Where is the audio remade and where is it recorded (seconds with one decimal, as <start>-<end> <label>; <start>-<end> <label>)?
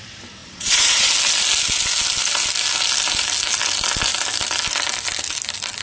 0.0-0.4 recorded; 0.4-1.1 remade; 1.1-5.8 recorded